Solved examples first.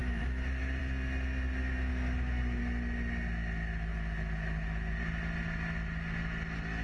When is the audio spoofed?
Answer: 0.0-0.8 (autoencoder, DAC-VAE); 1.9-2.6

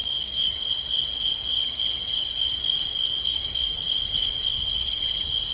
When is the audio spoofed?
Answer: 0.0-0.7 (codec, DAC); 2.0-5.0

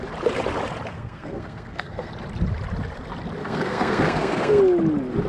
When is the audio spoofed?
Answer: 0.9-2.1 (codec, SNAC); 3.4-4.6